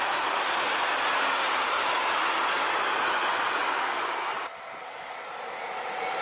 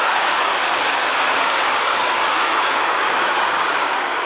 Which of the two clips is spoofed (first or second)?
second